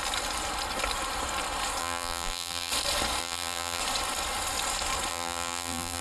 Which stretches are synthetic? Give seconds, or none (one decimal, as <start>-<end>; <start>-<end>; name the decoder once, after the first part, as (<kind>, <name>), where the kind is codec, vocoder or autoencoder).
1.8-2.7 (vocoder, BigVGAN v2); 3.2-3.8; 5.1-6.0